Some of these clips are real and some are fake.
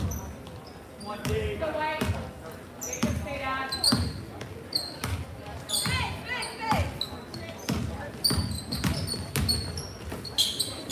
real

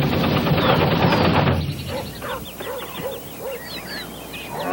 real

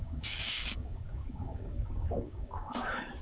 fake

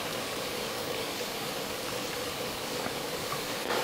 fake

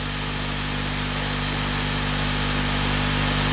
real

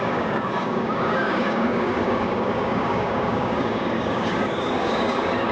fake